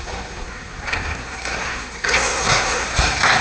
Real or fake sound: fake